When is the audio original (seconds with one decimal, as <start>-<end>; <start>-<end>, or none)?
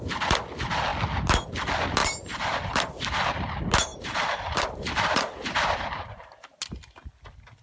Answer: 0.0-2.0; 3.0-3.9; 6.6-7.6